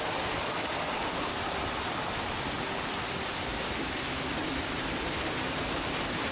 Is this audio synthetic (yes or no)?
no